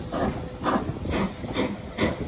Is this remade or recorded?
recorded